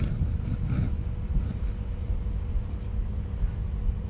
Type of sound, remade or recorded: recorded